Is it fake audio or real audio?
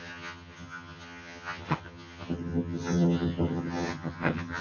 fake